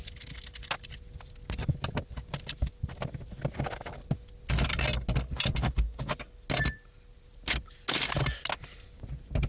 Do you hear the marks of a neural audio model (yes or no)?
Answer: no